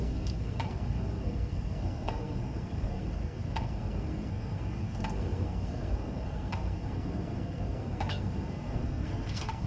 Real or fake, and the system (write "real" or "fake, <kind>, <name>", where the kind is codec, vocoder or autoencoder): fake, codec, SNAC